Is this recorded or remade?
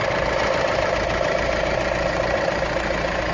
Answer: remade